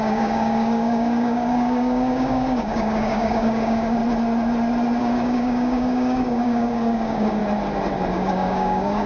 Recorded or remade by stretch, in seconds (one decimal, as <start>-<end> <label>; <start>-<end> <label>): 0.0-4.0 remade; 4.0-5.0 recorded; 5.0-7.4 remade; 7.4-8.1 recorded; 8.1-9.1 remade